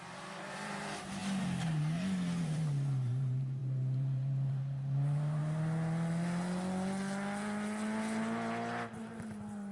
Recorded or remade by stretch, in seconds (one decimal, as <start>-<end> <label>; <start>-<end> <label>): 0.0-1.2 remade; 1.2-2.4 recorded; 2.4-5.4 remade; 5.4-9.0 recorded; 9.0-9.7 remade

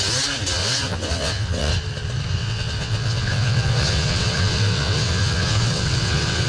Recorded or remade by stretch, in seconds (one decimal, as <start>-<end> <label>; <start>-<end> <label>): 0.0-0.6 recorded; 0.6-1.7 remade; 1.7-2.4 recorded; 2.4-6.5 remade